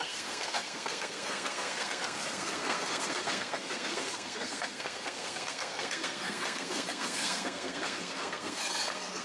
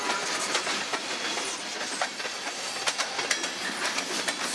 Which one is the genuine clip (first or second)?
second